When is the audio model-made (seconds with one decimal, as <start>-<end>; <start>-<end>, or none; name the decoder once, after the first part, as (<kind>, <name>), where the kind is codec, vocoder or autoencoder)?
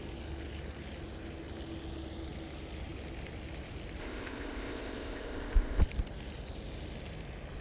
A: 4.0-5.8 (codec, ZipCodec)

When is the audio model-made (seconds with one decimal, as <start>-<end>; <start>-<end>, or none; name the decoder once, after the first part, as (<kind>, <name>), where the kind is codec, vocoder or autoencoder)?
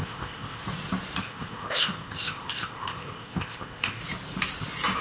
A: 0.0-0.6 (codec, ZipCodec); 1.2-4.0